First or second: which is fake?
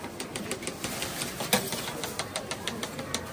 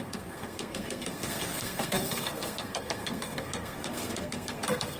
second